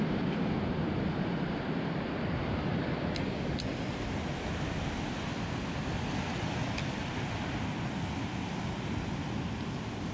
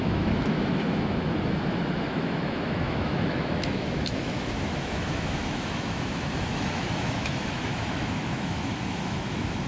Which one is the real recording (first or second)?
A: first